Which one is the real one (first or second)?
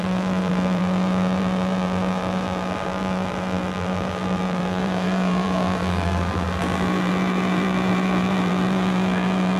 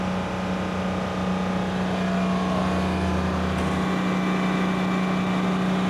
second